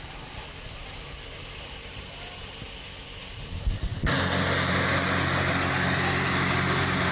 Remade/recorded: recorded